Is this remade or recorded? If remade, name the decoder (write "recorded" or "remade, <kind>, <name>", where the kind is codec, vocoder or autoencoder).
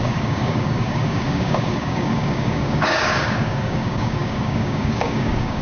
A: remade, codec, DAC